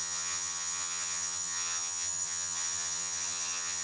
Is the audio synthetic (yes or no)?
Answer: yes